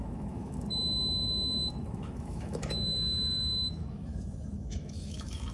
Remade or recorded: remade